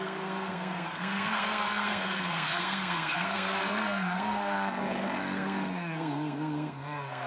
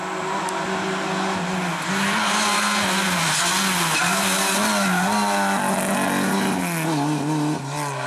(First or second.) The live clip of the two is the second